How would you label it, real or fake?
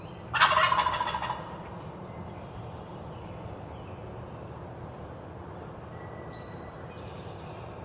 real